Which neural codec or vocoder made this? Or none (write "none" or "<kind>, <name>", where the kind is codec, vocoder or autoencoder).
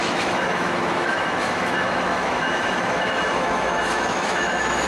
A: autoencoder, DAC-VAE